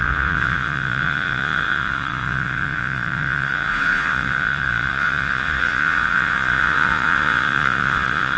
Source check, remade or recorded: remade